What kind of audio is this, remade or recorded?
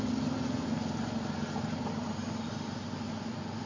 recorded